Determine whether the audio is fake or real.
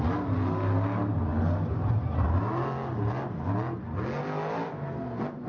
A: real